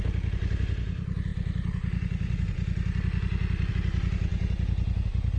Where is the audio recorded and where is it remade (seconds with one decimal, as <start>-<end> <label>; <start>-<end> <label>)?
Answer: 0.0-5.4 recorded